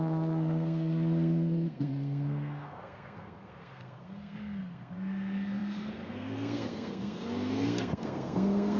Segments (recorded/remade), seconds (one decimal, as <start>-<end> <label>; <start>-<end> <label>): 0.0-8.8 remade